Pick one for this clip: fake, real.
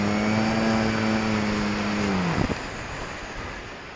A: real